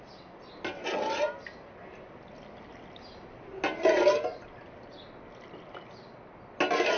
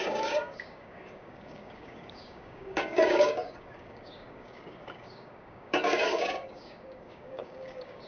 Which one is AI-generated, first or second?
second